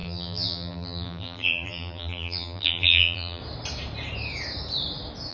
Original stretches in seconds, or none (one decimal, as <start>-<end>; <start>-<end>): 3.4-5.3